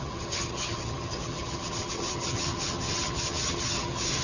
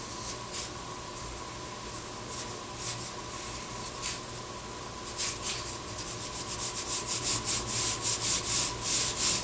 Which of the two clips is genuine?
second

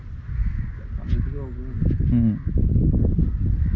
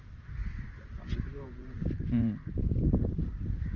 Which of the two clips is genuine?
first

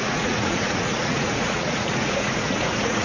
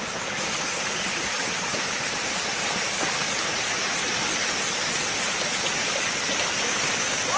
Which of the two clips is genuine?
second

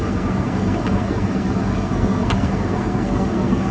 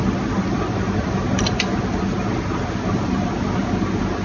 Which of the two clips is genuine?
second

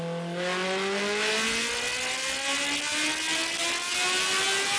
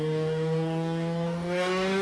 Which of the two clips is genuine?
first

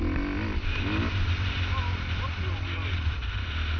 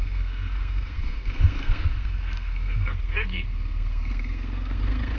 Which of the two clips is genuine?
first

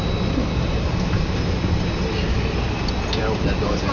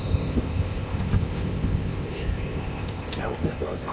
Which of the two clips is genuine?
first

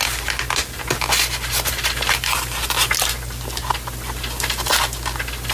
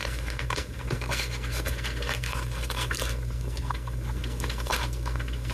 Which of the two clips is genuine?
first